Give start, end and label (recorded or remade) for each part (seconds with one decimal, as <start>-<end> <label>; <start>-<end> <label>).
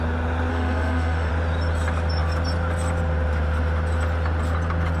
0.0-0.5 recorded; 0.5-1.3 remade; 1.3-5.0 recorded